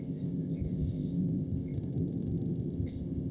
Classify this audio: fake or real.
fake